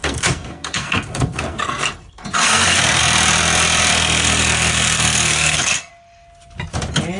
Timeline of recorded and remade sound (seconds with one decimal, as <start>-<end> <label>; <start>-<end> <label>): 0.0-3.0 remade; 3.0-3.9 recorded; 3.9-5.9 remade; 5.9-7.2 recorded